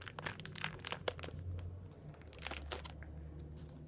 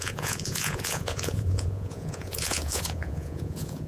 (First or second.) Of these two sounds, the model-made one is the second